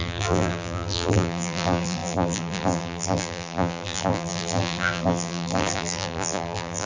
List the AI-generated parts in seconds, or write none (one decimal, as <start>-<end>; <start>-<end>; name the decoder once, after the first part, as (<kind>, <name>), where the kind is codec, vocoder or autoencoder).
0.0-6.9 (vocoder, BigVGAN v2)